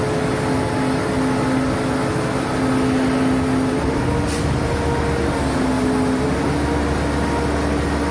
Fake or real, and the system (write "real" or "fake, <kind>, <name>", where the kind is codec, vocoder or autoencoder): real